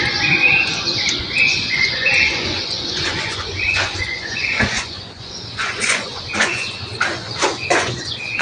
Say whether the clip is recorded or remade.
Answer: remade